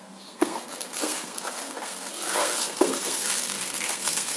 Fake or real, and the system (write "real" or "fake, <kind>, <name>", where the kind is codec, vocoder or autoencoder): fake, codec, SNAC